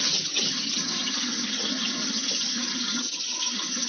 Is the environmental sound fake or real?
fake